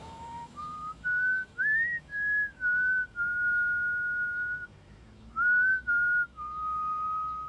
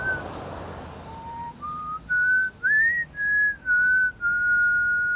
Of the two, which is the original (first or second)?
second